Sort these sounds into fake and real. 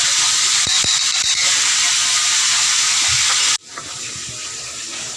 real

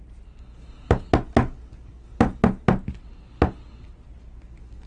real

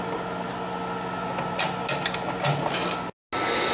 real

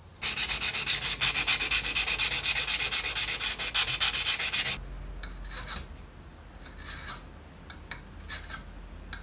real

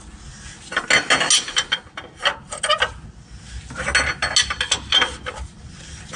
real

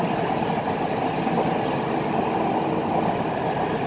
real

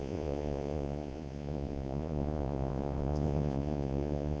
fake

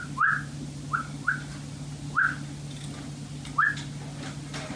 real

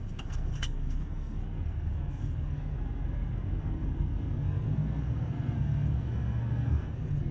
fake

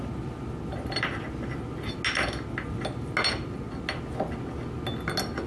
real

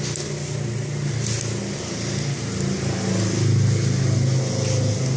real